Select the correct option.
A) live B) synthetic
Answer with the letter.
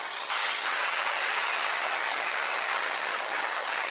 B